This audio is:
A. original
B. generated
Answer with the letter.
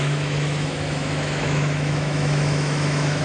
B